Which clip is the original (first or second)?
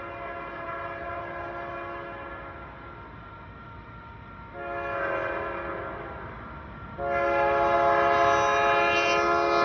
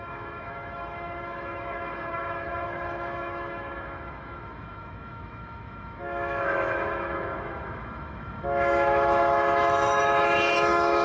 first